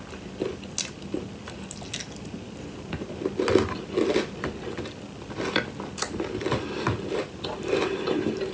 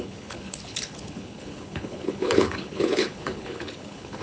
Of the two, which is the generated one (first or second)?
second